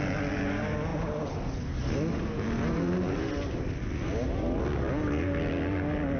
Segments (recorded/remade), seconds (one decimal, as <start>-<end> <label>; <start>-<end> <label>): 0.0-6.2 recorded